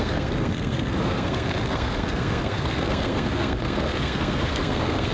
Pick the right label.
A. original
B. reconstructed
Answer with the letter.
B